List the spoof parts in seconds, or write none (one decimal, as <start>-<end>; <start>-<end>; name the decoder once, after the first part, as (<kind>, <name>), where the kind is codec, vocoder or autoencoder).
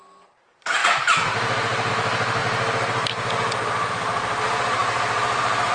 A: 0.0-2.4 (vocoder, BigVGAN v2); 3.9-5.7